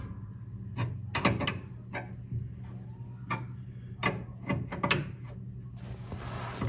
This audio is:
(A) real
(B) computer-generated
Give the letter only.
A